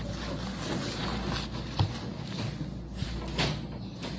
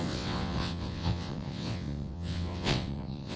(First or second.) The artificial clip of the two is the second